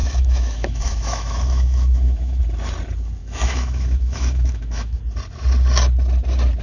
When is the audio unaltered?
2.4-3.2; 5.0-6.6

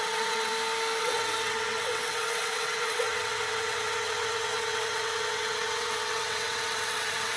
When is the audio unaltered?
0.5-1.0

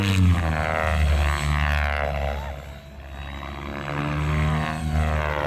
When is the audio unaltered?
0.0-5.5